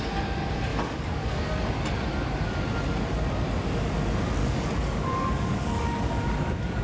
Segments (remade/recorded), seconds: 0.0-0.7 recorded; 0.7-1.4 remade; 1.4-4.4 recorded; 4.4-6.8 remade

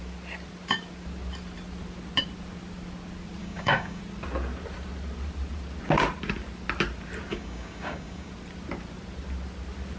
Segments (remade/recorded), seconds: 0.0-3.4 recorded; 3.4-4.0 remade; 4.0-7.3 recorded; 7.3-8.3 remade; 8.3-10.0 recorded